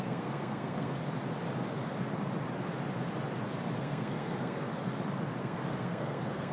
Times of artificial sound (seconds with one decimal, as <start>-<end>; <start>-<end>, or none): 0.0-1.0; 3.8-4.7; 5.4-6.5